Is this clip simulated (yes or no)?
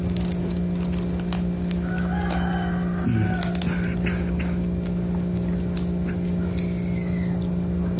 no